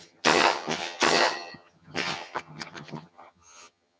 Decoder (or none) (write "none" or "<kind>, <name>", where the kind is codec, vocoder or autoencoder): vocoder, HiFi-GAN